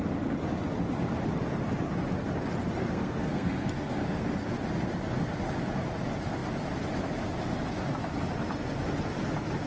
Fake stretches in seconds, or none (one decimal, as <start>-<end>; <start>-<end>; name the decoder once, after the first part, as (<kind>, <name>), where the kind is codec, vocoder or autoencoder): 2.8-4.3 (codec, SNAC)